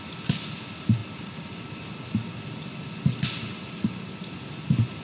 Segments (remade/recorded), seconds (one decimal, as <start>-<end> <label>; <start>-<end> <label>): 0.0-5.0 recorded

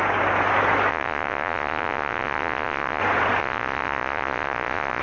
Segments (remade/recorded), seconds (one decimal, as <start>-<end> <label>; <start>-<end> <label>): 0.0-0.9 recorded; 0.9-3.0 remade; 3.0-3.4 recorded; 3.4-5.0 remade